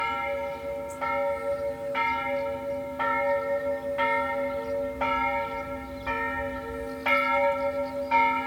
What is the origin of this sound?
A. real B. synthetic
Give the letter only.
A